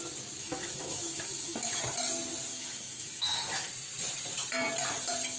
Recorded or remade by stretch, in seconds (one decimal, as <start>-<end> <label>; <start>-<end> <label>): 0.0-0.4 recorded; 0.4-1.8 remade; 1.8-2.5 recorded; 2.5-3.7 remade; 3.7-5.4 recorded